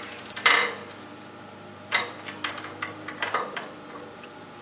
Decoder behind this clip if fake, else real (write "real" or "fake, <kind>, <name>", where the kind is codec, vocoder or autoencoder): fake, vocoder, BigVGAN v2